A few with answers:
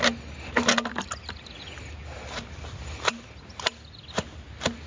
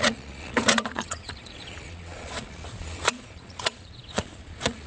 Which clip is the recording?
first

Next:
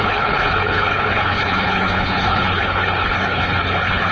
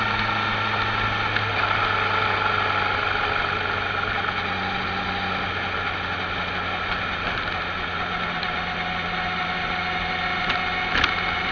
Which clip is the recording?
second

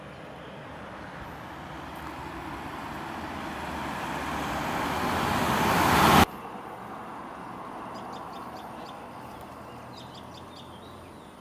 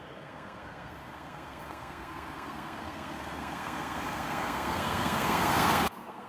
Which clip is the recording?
first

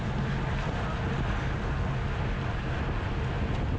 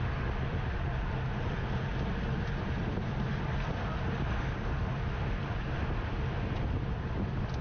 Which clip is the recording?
first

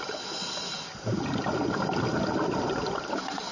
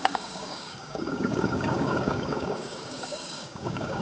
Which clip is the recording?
first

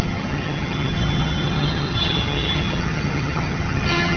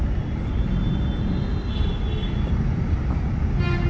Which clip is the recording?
second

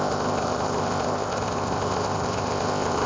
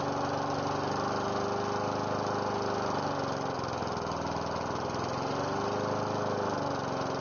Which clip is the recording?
second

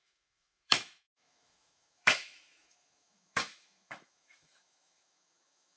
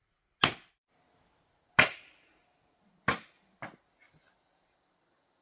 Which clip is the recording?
second